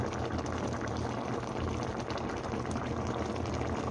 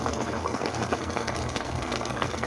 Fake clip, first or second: second